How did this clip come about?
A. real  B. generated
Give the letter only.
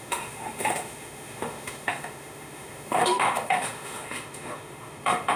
B